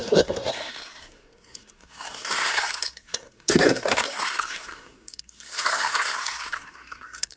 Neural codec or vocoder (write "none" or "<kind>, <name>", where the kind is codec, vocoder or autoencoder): codec, SNAC